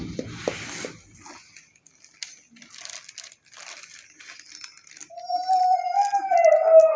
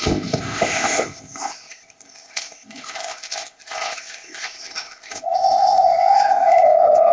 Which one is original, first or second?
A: first